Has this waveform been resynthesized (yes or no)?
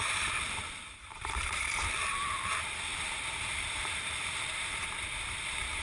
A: yes